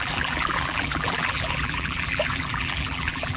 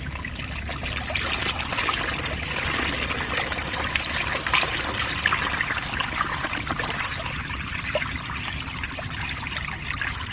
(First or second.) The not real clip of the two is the first